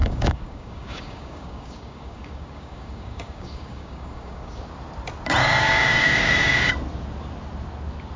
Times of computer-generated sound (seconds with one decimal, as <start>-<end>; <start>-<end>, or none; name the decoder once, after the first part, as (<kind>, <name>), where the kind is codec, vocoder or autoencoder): 0.0-4.6 (codec, DAC); 5.4-6.7